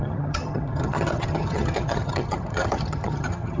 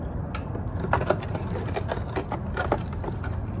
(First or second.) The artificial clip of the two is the first